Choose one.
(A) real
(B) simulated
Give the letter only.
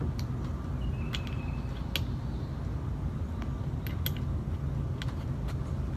A